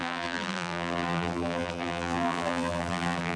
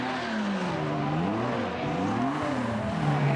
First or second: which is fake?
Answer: first